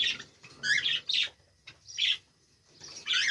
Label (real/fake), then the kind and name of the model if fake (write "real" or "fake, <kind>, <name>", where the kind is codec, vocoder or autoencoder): real